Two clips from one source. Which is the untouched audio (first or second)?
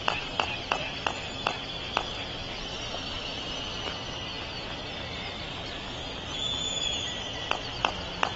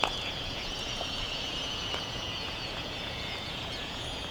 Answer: first